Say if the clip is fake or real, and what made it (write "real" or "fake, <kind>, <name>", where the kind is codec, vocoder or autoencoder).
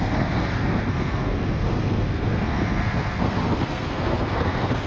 fake, codec, SNAC